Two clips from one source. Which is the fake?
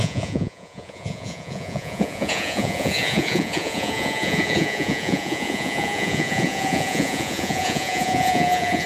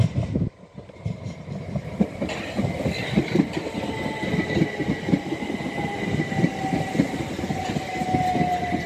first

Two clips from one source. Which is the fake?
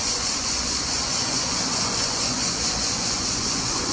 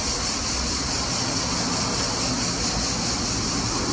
first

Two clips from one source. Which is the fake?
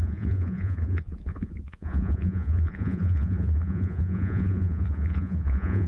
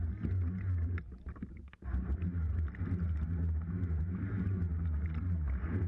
first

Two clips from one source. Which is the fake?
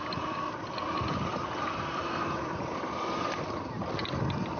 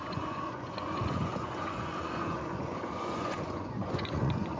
second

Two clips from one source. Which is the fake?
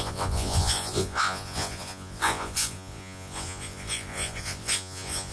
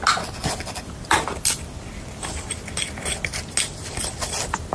first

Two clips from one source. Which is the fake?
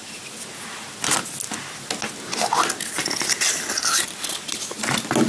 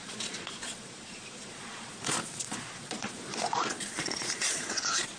second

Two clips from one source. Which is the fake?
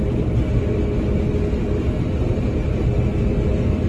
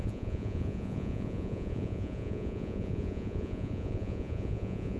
second